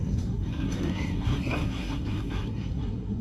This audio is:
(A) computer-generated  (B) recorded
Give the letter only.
A